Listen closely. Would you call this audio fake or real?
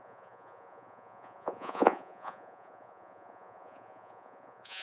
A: fake